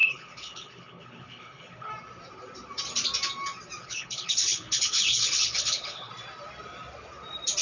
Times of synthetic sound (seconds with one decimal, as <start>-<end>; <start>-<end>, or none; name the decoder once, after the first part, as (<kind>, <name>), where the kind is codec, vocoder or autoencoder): 0.0-1.9 (codec, HILCodec); 3.8-6.1